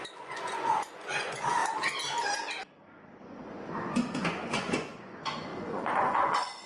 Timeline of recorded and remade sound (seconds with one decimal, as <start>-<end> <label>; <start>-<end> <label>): 0.0-1.6 remade; 1.6-3.2 recorded; 3.2-6.7 remade